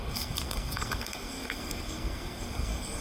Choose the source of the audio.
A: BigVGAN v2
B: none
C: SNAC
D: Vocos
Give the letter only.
C